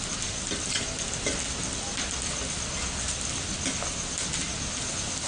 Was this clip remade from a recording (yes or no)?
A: no